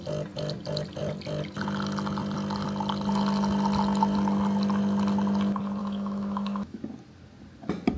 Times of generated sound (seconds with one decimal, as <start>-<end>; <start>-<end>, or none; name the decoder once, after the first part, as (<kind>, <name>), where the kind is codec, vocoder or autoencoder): 5.8-6.8 (autoencoder, DAC-VAE)